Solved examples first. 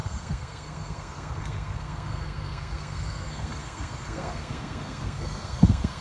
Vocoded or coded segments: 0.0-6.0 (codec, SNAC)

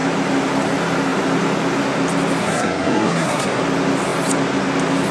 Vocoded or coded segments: 2.4-3.6 (codec, SNAC)

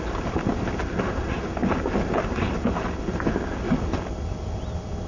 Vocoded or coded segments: none

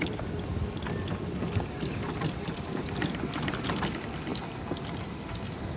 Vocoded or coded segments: 4.3-5.0 (vocoder, BigVGAN v2)

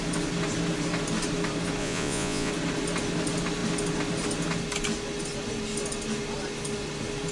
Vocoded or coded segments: 1.8-2.5 (vocoder, Vocos)

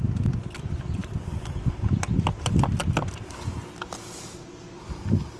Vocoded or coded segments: none